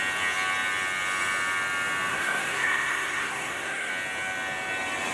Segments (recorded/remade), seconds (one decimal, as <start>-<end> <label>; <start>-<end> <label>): 0.0-2.1 recorded; 2.1-3.9 remade; 3.9-5.1 recorded